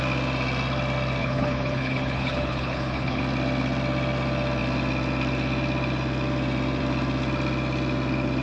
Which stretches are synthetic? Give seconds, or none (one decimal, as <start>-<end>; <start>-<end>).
1.2-3.2

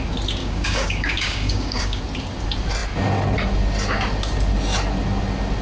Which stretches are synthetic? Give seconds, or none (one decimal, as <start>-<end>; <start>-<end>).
0.4-2.0